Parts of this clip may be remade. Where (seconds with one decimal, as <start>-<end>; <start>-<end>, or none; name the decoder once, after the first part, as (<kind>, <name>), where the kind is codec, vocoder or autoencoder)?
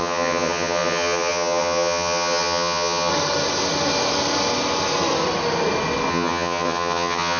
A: 0.0-3.1 (vocoder, HiFi-GAN); 6.1-7.4